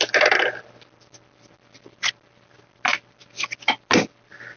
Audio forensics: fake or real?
real